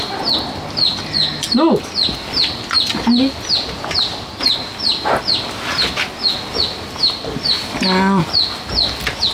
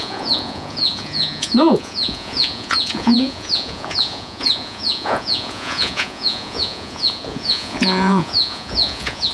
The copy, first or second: second